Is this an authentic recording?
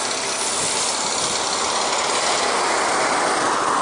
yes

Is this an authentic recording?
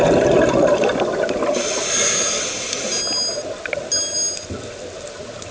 yes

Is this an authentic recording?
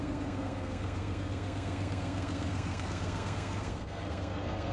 no